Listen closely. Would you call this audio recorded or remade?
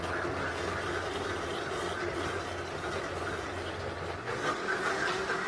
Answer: recorded